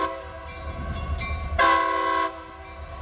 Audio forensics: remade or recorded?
recorded